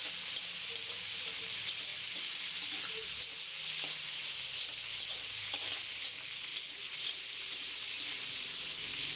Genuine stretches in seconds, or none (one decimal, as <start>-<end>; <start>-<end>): 0.0-9.2